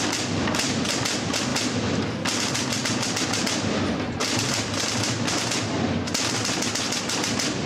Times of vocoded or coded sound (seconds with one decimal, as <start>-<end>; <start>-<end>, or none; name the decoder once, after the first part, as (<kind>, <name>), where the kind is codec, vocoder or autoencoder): none